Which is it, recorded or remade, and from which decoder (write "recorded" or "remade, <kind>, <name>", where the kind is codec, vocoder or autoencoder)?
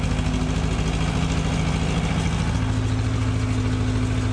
recorded